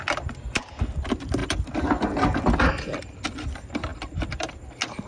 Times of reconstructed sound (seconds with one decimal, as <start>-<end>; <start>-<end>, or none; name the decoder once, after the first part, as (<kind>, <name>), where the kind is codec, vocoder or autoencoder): none